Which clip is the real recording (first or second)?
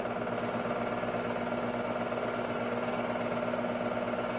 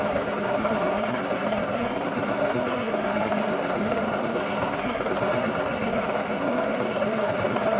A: first